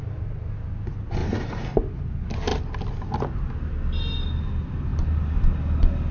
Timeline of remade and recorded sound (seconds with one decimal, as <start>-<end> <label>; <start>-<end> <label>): 0.0-6.1 recorded